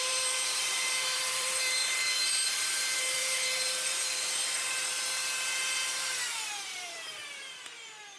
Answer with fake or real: fake